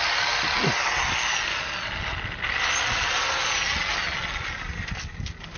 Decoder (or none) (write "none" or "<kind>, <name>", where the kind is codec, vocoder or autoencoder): none